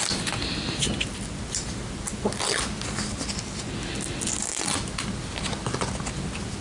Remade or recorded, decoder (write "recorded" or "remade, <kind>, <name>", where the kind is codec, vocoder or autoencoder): recorded